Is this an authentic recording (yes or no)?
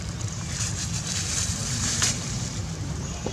no